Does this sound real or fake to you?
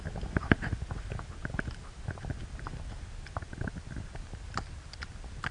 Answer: real